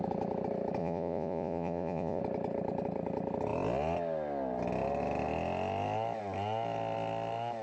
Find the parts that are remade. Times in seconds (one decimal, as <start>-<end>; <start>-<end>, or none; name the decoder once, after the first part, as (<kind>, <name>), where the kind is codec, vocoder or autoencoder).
0.8-2.2 (vocoder, Vocos)